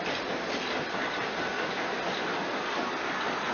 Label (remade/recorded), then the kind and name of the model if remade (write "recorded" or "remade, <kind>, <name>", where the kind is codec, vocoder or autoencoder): recorded